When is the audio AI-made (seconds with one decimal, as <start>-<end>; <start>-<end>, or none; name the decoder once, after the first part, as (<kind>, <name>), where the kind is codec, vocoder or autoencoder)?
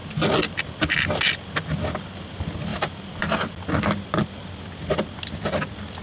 2.7-3.5 (vocoder, BigVGAN v2)